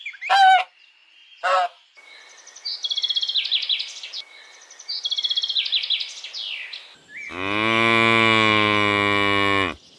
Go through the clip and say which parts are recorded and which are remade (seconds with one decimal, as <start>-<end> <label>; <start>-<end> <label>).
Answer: 0.0-10.0 recorded